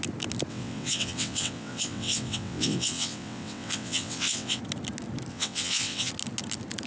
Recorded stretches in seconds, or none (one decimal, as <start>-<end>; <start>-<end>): 0.0-0.5; 4.6-5.3; 6.1-6.9